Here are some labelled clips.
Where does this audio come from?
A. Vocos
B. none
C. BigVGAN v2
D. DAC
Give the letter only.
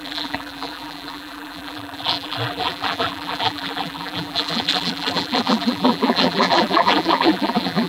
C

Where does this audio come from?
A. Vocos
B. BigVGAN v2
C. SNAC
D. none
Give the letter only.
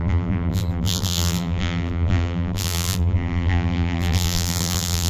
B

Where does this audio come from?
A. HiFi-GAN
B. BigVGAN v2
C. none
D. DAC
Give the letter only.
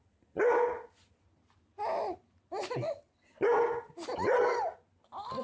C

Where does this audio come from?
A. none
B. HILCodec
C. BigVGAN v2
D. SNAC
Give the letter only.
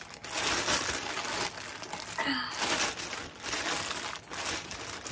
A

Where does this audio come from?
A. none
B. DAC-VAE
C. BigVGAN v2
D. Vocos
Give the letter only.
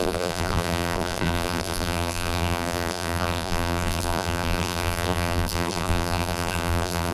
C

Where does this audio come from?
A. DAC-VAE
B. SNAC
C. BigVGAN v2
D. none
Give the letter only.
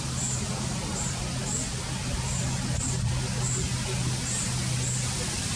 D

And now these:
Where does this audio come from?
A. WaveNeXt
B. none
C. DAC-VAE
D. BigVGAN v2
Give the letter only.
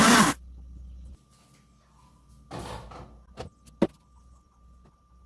B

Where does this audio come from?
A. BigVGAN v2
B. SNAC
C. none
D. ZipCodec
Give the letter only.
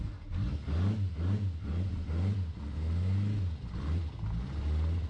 C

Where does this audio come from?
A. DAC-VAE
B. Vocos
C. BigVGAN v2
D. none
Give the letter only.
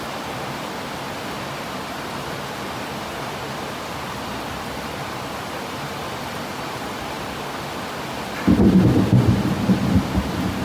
D